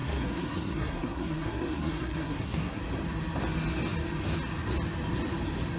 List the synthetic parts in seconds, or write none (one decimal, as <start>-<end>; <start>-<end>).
0.0-2.8